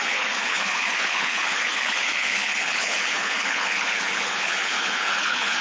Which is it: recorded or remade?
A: remade